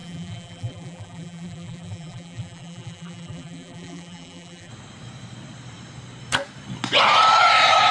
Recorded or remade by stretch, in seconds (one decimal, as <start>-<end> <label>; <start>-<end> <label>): 0.0-4.7 remade; 4.7-7.9 recorded